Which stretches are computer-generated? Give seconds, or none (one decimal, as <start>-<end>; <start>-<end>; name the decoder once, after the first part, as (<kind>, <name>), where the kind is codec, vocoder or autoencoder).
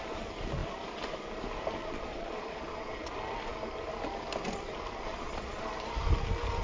1.8-3.1 (vocoder, Vocos); 5.1-5.7